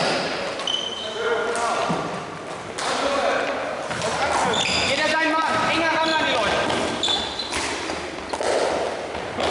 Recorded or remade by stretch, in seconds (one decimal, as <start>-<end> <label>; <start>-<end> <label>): 0.0-9.5 recorded